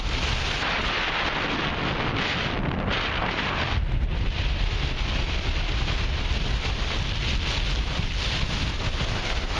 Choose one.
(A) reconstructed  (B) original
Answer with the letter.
B